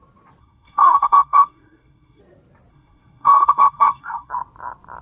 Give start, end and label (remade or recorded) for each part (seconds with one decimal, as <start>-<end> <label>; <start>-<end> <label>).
0.0-0.4 recorded; 0.4-2.2 remade; 2.2-2.7 recorded; 2.7-4.3 remade; 4.3-5.0 recorded